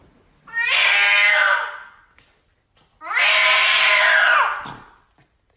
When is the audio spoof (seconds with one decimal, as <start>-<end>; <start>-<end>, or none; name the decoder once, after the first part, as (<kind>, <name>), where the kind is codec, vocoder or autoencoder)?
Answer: none